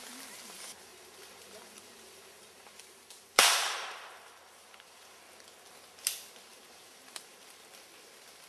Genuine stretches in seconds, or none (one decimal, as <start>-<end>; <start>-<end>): 0.0-0.9; 5.2-6.5; 7.4-8.5